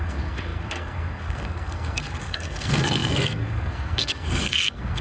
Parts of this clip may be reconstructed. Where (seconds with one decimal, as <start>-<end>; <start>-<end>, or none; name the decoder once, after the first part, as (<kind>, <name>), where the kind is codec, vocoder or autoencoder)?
0.0-5.0 (codec, SNAC)